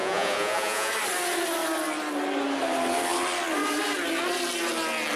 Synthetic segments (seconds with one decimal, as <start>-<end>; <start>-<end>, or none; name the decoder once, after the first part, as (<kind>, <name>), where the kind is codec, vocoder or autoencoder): 0.0-0.9 (vocoder, Vocos)